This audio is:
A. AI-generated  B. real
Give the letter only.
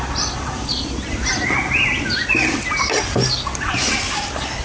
B